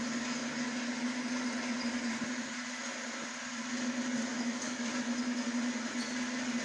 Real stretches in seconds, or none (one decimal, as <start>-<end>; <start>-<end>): 0.0-4.3; 4.9-6.6